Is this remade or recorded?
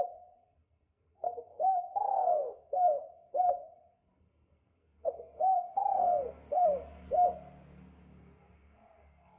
remade